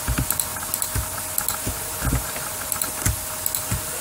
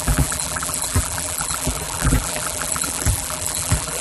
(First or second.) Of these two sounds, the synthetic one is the second